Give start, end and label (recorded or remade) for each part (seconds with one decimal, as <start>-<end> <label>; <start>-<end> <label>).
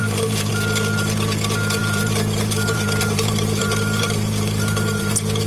0.0-0.5 remade; 0.5-1.8 recorded; 1.8-5.1 remade; 5.1-5.5 recorded